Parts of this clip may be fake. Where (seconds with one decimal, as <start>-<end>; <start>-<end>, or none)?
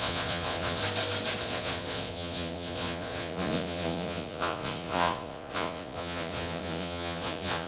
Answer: 0.0-0.8; 1.4-7.7